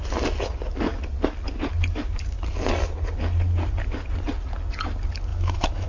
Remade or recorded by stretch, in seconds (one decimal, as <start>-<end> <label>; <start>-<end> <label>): 0.0-5.3 recorded; 5.3-5.9 remade